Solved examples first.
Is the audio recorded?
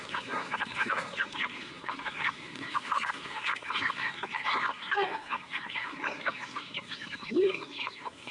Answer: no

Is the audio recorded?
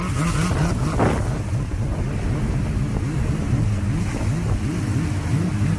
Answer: yes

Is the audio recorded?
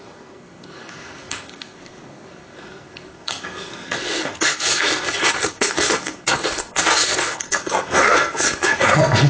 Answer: no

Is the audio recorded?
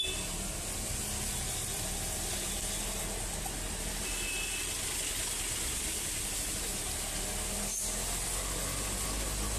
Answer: yes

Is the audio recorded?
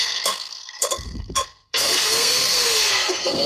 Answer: no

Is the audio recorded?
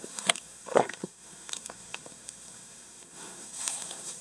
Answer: no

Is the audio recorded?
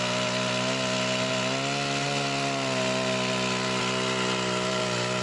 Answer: yes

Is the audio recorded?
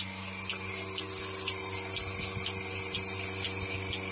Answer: yes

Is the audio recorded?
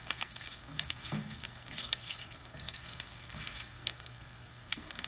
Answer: no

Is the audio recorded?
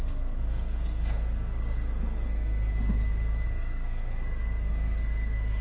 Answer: no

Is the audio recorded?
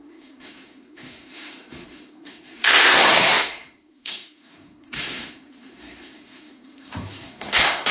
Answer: no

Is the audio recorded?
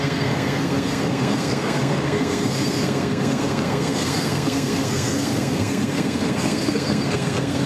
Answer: no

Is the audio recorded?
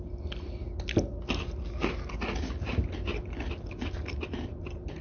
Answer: yes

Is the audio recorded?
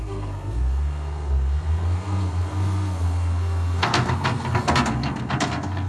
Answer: no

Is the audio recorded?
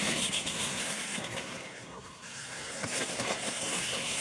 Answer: no